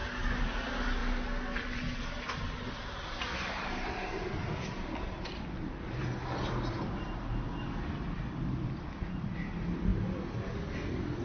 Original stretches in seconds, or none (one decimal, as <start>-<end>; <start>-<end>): 0.0-11.2